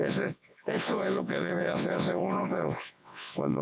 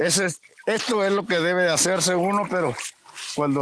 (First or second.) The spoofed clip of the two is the first